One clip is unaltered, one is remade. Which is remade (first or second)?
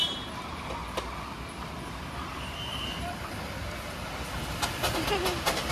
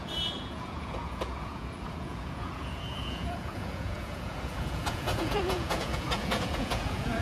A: second